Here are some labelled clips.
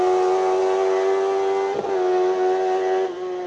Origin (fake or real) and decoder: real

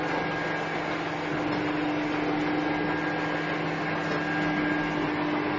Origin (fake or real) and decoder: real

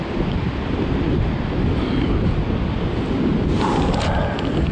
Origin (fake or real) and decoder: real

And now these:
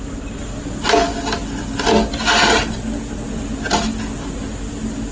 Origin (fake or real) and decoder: real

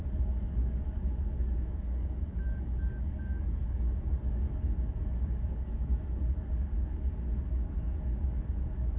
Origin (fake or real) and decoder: fake, codec, DAC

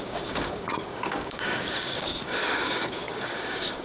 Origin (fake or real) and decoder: fake, codec, DAC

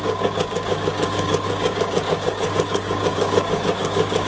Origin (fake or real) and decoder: fake, codec, DAC